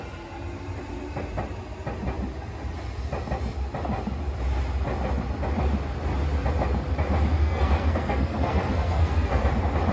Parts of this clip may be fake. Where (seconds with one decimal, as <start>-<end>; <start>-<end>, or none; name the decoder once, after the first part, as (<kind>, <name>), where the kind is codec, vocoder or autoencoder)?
7.4-9.5 (codec, SNAC)